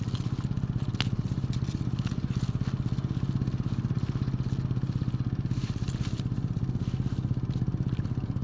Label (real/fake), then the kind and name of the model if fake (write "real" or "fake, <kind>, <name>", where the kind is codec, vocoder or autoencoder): real